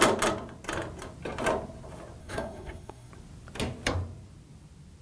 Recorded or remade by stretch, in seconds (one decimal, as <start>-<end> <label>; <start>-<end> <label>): 0.0-2.2 recorded; 2.2-3.1 remade; 3.1-5.0 recorded